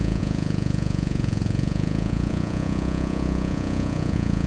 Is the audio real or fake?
fake